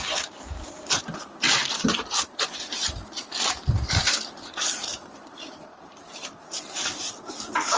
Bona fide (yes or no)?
no